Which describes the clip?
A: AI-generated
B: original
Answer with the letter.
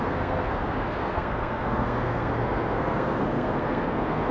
A